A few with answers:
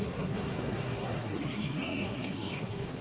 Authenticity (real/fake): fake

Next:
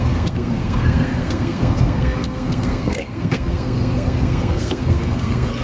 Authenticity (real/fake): fake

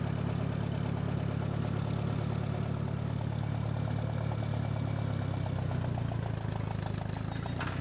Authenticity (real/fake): real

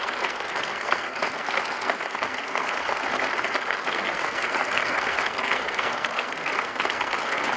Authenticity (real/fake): fake